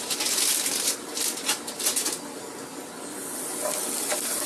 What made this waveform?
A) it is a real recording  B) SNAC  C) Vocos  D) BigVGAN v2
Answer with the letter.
A